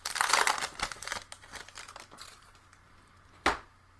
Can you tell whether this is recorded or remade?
recorded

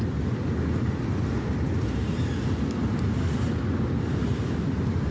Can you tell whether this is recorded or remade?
recorded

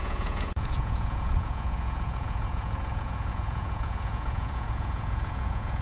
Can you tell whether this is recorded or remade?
remade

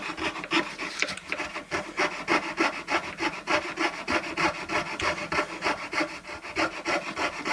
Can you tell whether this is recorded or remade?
recorded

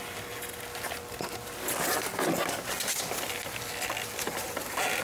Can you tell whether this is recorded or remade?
recorded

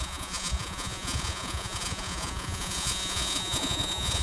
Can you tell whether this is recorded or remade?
remade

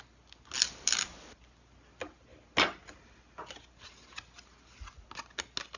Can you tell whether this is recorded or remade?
recorded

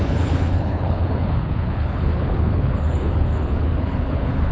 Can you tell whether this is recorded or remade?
remade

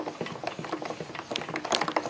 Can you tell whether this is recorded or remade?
recorded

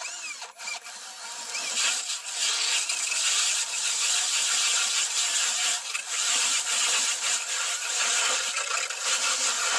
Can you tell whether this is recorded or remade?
recorded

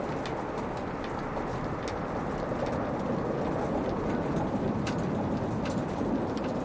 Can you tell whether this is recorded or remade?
recorded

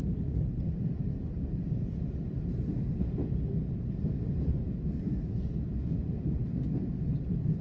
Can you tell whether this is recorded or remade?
recorded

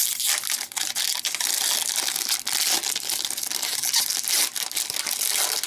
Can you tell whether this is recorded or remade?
recorded